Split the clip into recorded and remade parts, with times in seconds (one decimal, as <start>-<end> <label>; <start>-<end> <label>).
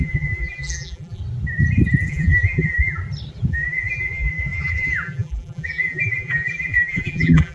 0.0-1.2 remade; 1.2-2.1 recorded; 2.1-3.0 remade; 3.0-3.5 recorded; 3.5-7.5 remade